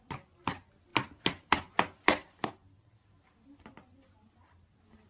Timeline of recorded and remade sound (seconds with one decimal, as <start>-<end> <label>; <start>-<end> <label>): 0.0-5.1 recorded